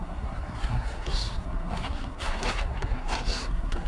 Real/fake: fake